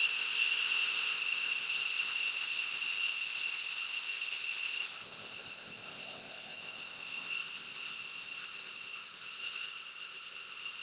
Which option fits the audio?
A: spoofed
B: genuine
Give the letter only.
A